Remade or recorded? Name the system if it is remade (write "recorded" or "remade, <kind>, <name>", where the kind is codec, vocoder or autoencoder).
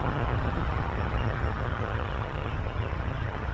remade, vocoder, HiFi-GAN